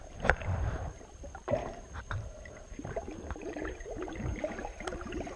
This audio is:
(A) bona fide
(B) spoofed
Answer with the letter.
B